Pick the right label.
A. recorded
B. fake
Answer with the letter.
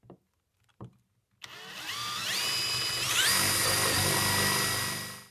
A